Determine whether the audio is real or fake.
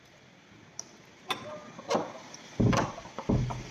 real